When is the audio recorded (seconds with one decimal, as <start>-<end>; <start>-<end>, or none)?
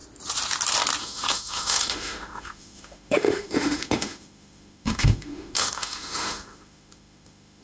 0.0-1.0